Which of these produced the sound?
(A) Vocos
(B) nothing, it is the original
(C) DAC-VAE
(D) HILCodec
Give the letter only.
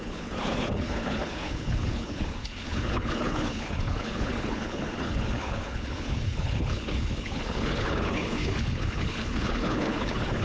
D